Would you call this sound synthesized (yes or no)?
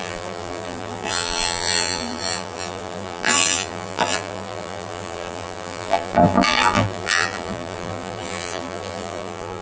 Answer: yes